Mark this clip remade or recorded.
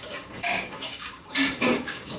remade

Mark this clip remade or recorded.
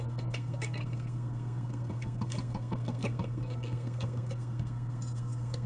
remade